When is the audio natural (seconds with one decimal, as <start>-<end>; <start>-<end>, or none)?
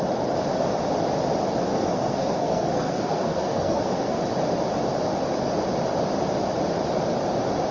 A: 0.0-1.7; 4.2-7.7